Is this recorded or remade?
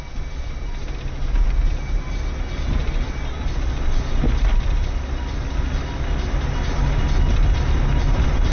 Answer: recorded